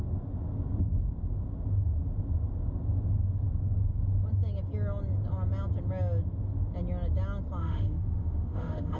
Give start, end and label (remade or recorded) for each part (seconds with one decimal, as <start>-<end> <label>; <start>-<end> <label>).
0.0-7.6 recorded; 7.6-9.0 remade